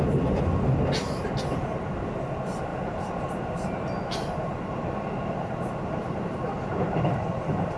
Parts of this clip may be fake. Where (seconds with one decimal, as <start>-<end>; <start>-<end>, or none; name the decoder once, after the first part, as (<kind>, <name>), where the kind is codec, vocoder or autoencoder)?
2.7-7.8 (vocoder, BigVGAN v2)